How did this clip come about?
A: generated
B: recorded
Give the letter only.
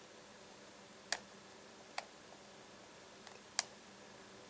B